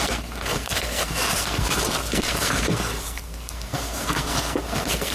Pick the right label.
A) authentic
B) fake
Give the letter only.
B